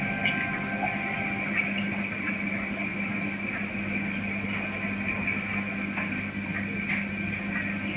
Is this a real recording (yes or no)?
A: yes